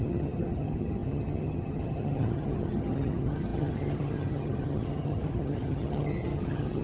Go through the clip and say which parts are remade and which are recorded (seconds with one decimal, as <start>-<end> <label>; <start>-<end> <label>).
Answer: 0.0-6.8 remade